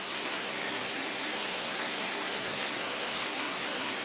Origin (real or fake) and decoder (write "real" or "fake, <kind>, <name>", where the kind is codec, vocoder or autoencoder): fake, codec, SNAC